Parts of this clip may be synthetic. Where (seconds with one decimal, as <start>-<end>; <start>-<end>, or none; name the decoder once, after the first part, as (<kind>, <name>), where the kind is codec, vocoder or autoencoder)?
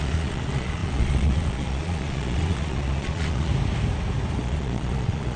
0.0-3.5 (vocoder, Vocos); 4.4-5.4